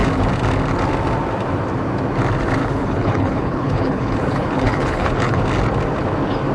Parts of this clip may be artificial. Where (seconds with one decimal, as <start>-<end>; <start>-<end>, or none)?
2.6-5.4